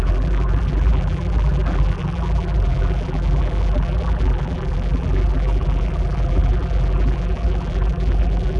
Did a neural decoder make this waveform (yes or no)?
yes